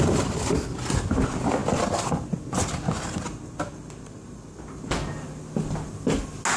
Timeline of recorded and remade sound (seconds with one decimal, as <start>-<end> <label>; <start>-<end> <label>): 0.0-6.6 recorded